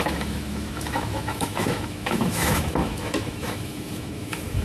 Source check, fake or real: fake